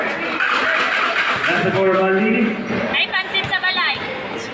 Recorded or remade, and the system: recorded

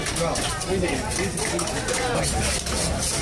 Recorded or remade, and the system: recorded